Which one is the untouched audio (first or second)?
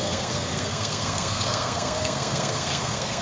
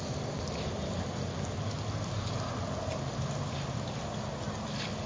second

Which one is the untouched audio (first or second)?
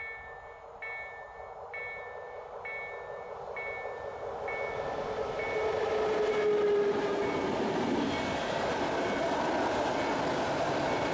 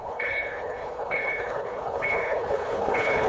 first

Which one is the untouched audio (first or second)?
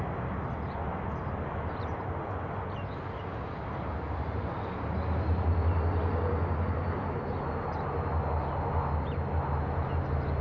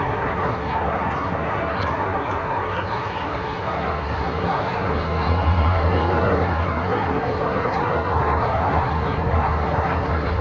first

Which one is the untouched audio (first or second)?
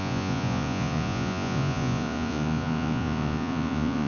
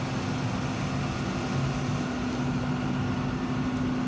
second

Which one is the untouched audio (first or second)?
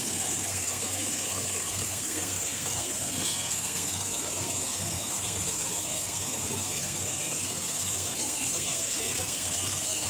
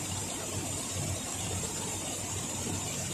second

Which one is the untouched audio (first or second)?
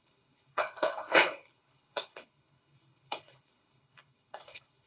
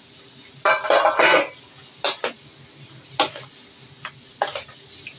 second